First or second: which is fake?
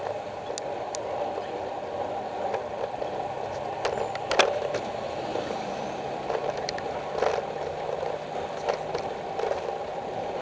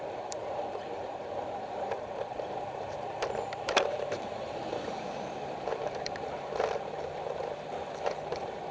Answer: second